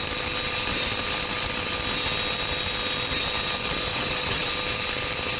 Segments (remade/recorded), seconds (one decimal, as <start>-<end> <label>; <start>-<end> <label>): 0.0-3.9 recorded; 3.9-4.5 remade; 4.5-5.4 recorded